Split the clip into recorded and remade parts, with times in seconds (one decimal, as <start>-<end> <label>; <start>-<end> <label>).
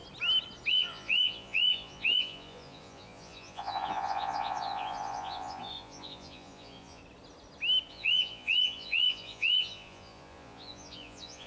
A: 0.0-0.7 recorded; 0.7-7.0 remade; 7.0-7.9 recorded; 7.9-11.5 remade